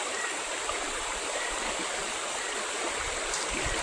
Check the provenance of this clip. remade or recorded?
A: recorded